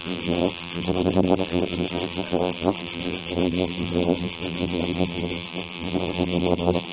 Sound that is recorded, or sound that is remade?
remade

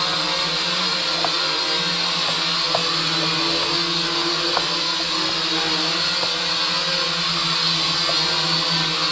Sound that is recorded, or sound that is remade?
recorded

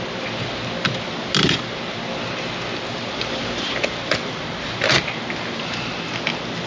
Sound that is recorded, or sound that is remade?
recorded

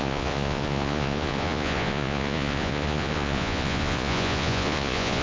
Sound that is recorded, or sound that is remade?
remade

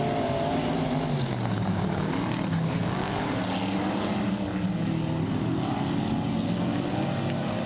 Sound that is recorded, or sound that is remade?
recorded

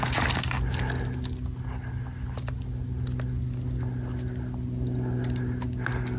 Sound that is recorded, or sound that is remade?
recorded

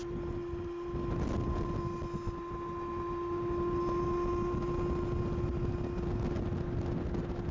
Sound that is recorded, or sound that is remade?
recorded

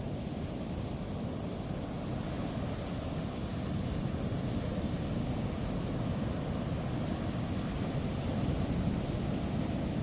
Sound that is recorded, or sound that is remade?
recorded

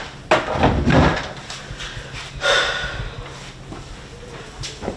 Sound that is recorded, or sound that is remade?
recorded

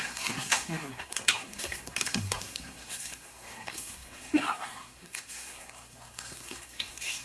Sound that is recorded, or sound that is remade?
remade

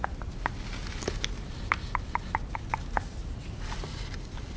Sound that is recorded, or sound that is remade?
recorded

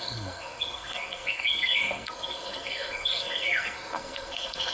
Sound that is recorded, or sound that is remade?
remade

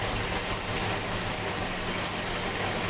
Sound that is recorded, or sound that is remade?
recorded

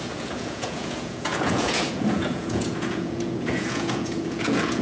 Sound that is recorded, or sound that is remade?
remade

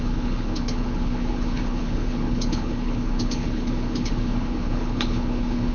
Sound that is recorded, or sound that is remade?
remade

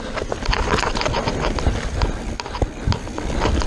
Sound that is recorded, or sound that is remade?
recorded